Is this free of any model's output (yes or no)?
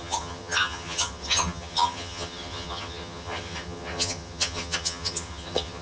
no